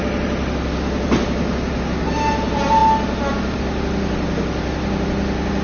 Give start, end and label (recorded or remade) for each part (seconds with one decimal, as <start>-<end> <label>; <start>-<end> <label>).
0.0-5.6 recorded